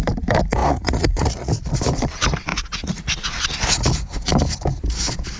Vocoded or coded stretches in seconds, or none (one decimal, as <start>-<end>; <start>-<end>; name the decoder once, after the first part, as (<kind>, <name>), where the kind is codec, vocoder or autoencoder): 0.6-1.5 (vocoder, Vocos); 2.5-3.4